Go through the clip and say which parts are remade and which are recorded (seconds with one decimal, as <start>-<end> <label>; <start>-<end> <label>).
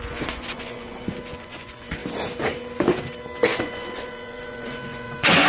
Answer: 0.0-2.0 remade; 2.0-3.6 recorded; 3.6-5.5 remade